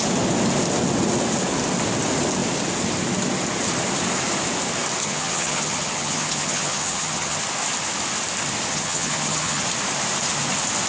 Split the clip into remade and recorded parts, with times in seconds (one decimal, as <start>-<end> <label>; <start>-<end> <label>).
0.0-5.0 recorded; 5.0-7.4 remade; 7.4-8.7 recorded; 8.7-9.6 remade; 9.6-10.9 recorded